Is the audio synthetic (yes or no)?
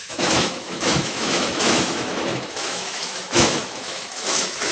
yes